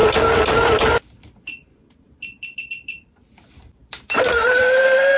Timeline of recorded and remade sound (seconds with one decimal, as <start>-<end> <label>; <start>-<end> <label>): 0.0-1.9 recorded; 1.9-5.2 remade